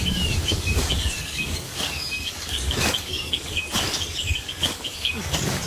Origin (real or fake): fake